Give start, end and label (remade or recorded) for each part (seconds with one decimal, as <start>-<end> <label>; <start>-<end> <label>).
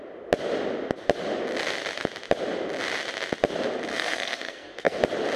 0.0-3.9 recorded; 3.9-5.0 remade; 5.0-5.4 recorded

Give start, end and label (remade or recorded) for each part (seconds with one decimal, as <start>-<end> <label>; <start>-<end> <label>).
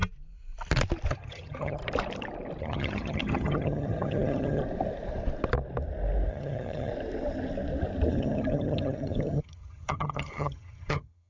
0.0-1.1 recorded; 1.1-1.8 remade; 1.8-2.6 recorded; 2.6-4.6 remade; 4.6-6.3 recorded; 6.3-6.9 remade; 6.9-8.1 recorded; 8.1-11.3 remade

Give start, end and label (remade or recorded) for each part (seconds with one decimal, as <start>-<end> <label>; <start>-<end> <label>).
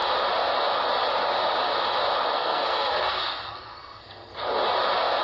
0.0-2.3 recorded; 2.3-4.3 remade; 4.3-5.2 recorded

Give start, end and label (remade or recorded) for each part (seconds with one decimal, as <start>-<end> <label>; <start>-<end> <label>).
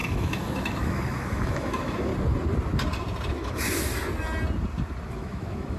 0.0-2.1 remade; 2.1-3.3 recorded; 3.3-3.9 remade; 3.9-5.1 recorded; 5.1-5.8 remade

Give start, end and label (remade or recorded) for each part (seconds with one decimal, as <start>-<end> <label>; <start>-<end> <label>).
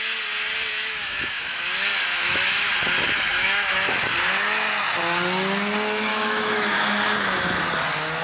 0.0-0.7 recorded; 0.7-1.7 remade; 1.7-2.1 recorded; 2.1-2.7 remade; 2.7-3.3 recorded; 3.3-4.0 remade; 4.0-6.1 recorded; 6.1-7.0 remade; 7.0-8.2 recorded